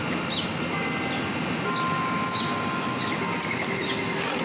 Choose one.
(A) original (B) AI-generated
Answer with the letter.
A